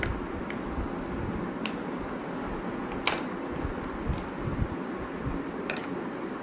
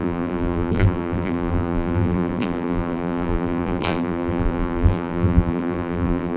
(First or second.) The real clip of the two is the first